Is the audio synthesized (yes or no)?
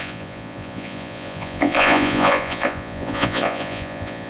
yes